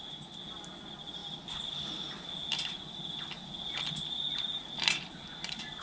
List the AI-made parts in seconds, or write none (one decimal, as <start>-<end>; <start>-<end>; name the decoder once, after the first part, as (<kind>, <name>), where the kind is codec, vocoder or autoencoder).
none